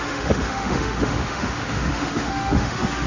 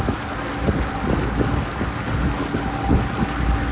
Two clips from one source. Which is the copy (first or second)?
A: first